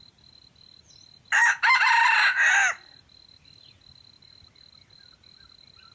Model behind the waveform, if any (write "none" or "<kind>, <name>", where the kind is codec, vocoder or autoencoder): none